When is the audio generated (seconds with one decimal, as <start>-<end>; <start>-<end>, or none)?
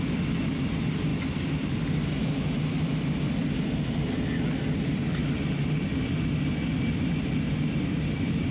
none